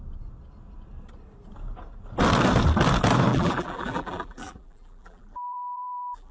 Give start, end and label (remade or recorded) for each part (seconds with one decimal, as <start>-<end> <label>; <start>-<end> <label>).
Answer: 0.0-3.3 recorded; 3.3-6.3 remade